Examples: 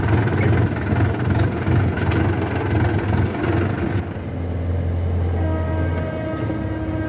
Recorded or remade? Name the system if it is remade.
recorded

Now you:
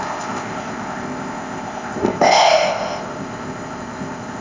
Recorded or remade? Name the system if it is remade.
remade, codec, ZipCodec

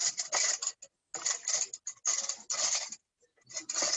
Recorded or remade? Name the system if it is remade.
recorded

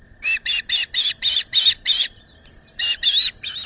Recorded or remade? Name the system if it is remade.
remade, vocoder, BigVGAN v2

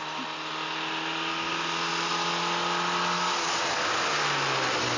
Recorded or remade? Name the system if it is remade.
recorded